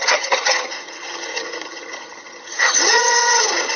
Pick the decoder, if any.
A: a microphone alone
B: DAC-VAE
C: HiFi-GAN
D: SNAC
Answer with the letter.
C